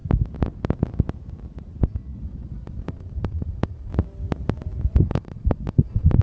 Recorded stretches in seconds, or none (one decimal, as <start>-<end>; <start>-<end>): 0.0-2.2; 3.9-5.0